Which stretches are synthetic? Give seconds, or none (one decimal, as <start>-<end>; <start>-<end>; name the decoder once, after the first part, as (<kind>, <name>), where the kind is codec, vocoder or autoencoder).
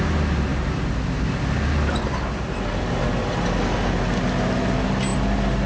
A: 5.1-5.7 (vocoder, BigVGAN v2)